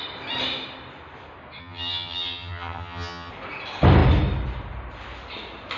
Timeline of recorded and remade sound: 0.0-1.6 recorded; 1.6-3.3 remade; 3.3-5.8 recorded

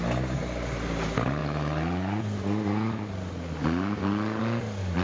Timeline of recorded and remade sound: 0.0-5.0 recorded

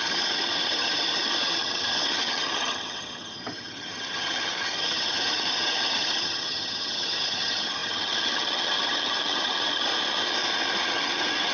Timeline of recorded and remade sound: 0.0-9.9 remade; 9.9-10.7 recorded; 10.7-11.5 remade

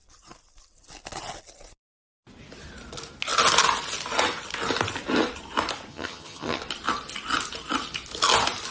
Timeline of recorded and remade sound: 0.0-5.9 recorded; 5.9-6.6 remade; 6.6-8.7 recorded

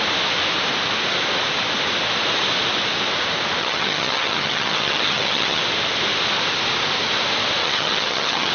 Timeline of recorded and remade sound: 0.0-3.6 recorded; 3.6-5.6 remade; 5.6-7.6 recorded; 7.6-8.5 remade

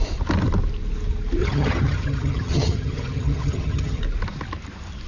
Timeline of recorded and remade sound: 0.0-1.4 recorded; 1.4-4.0 remade; 4.0-5.1 recorded